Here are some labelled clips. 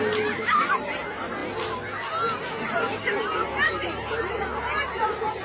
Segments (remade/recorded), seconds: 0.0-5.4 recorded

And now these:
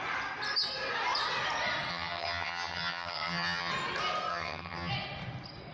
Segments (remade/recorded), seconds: 0.0-1.9 recorded; 1.9-3.7 remade; 3.7-4.3 recorded; 4.3-4.9 remade; 4.9-5.7 recorded

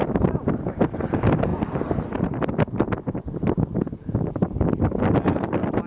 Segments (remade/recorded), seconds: 0.0-5.9 recorded

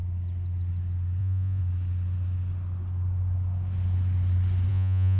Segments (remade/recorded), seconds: 0.0-1.2 recorded; 1.2-1.6 remade; 1.6-4.7 recorded; 4.7-5.2 remade

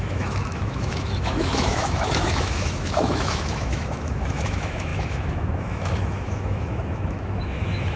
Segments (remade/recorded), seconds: 0.0-8.0 remade

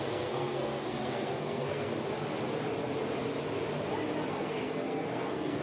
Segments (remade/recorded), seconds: 0.0-1.9 remade; 1.9-4.3 recorded; 4.3-5.6 remade

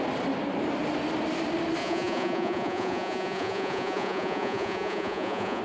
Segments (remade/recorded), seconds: 0.0-1.8 recorded; 1.8-5.6 remade